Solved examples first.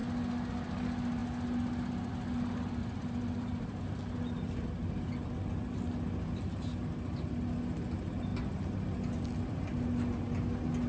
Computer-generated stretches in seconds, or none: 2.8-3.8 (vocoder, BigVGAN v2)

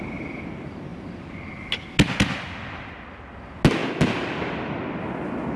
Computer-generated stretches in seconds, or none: none

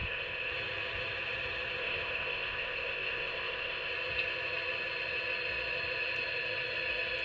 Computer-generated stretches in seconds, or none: 0.0-0.5 (codec, ZipCodec); 1.8-3.9

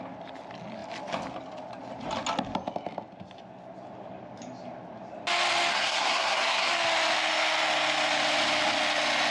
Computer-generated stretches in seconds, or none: 5.7-6.7 (codec, SNAC)

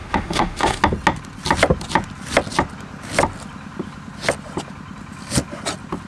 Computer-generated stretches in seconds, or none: 0.0-0.8 (autoencoder, DAC-VAE)

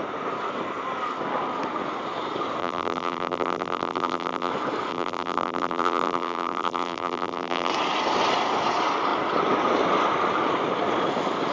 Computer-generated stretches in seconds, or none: 2.6-4.5 (vocoder, BigVGAN v2); 4.9-7.7